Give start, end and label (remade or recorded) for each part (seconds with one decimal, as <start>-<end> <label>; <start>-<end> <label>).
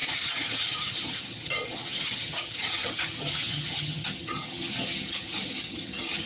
0.0-6.3 remade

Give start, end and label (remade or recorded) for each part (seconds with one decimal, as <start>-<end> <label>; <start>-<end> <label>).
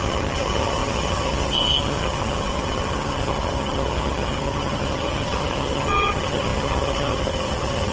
0.0-7.9 remade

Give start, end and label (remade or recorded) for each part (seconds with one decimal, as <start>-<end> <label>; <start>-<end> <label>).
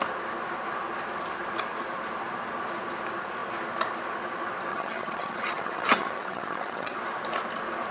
0.0-4.7 recorded; 4.7-7.0 remade; 7.0-7.9 recorded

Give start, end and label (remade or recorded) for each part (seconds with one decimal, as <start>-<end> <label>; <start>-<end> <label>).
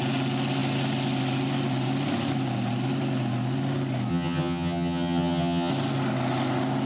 0.0-4.1 recorded; 4.1-5.7 remade; 5.7-6.9 recorded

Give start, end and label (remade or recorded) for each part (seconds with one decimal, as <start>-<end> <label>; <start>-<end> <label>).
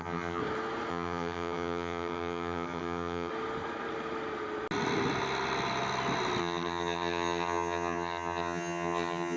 0.0-0.4 remade; 0.4-0.9 recorded; 0.9-3.3 remade; 3.3-6.4 recorded; 6.4-9.4 remade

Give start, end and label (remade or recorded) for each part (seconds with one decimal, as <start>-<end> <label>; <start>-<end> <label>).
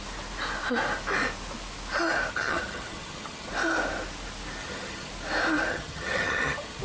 0.0-2.3 recorded; 2.3-3.5 remade; 3.5-4.6 recorded; 4.6-5.1 remade; 5.1-5.7 recorded; 5.7-6.8 remade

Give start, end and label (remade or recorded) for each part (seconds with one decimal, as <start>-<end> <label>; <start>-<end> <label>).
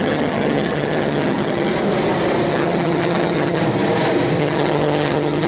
0.0-1.7 remade; 1.7-2.5 recorded; 2.5-3.6 remade; 3.6-4.4 recorded; 4.4-5.5 remade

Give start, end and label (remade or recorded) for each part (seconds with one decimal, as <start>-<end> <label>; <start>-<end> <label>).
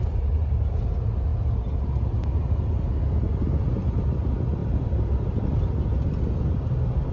0.0-7.1 recorded